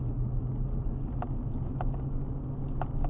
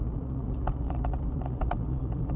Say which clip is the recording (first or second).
first